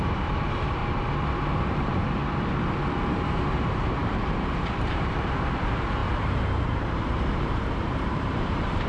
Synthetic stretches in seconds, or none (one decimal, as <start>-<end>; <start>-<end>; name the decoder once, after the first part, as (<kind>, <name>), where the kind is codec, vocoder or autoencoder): 0.0-0.8 (vocoder, BigVGAN v2); 1.3-2.2; 3.1-8.9